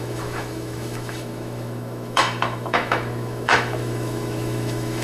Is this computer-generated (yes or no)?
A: yes